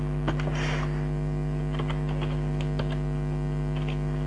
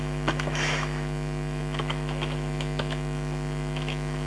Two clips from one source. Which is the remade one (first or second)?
second